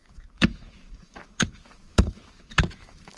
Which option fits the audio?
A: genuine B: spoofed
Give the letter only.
B